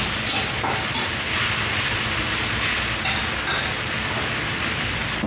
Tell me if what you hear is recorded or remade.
recorded